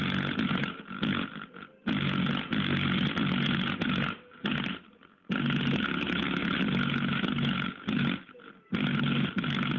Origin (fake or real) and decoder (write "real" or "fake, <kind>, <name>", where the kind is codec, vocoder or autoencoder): real